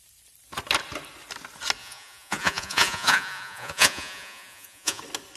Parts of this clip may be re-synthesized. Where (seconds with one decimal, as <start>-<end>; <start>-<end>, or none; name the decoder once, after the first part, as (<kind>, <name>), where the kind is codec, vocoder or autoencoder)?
1.8-5.0 (vocoder, Vocos)